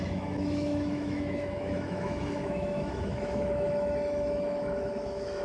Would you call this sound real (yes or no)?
no